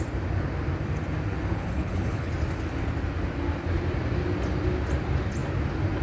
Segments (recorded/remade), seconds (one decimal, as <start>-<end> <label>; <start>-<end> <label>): 0.0-1.5 recorded; 1.5-2.3 remade; 2.3-6.0 recorded